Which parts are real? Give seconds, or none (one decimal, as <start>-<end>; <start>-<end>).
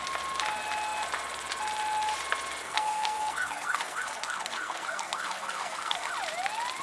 0.0-2.6; 6.1-6.8